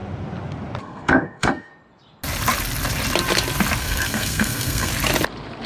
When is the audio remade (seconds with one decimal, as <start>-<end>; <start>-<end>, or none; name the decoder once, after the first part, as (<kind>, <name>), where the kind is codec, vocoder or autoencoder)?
0.8-1.7 (codec, SNAC); 3.8-4.9